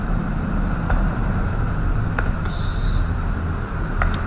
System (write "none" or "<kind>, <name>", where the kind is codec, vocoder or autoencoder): none